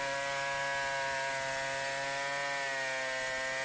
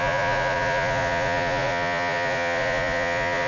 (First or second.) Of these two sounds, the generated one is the second